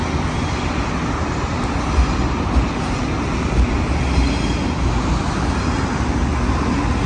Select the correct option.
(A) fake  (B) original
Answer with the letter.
B